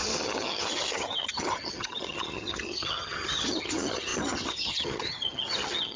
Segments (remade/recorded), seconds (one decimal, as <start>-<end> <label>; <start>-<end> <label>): 0.0-6.0 remade

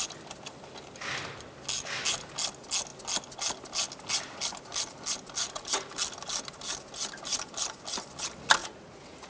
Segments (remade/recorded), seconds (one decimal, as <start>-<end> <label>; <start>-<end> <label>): 0.0-8.6 recorded; 8.6-9.3 remade

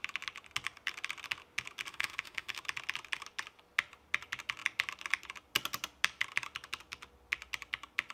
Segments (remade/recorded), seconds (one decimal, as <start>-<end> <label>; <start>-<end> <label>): 0.0-1.9 recorded; 1.9-2.6 remade; 2.6-8.1 recorded

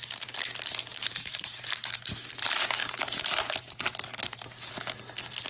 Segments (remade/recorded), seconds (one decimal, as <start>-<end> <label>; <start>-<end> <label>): 0.0-0.9 recorded; 0.9-1.6 remade; 1.6-2.8 recorded; 2.8-4.7 remade; 4.7-5.5 recorded

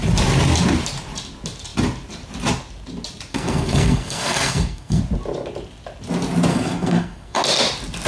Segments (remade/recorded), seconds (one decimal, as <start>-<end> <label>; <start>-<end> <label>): 0.0-3.3 recorded; 3.3-5.0 remade; 5.0-6.5 recorded; 6.5-7.4 remade; 7.4-8.1 recorded